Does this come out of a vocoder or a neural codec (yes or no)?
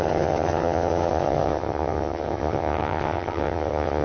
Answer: yes